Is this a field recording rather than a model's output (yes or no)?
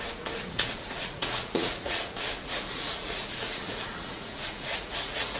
no